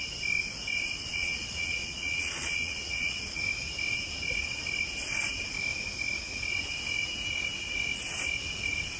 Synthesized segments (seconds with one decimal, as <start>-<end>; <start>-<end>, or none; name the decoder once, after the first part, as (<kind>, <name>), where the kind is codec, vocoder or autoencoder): 1.0-3.4 (vocoder, Vocos)